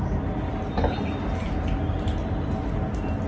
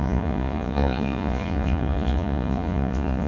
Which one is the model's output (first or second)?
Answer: second